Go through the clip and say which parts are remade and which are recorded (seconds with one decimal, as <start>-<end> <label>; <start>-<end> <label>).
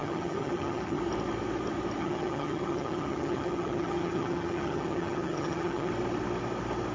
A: 0.0-1.0 remade; 1.0-2.0 recorded; 2.0-5.9 remade; 5.9-6.9 recorded